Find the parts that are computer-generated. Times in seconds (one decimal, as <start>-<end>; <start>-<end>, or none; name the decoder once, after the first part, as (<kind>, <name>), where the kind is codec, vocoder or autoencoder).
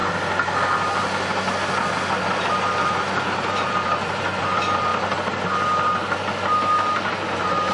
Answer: 3.7-4.9 (vocoder, BigVGAN v2)